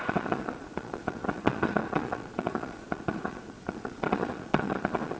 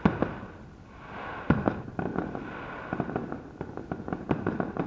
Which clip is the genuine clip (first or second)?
second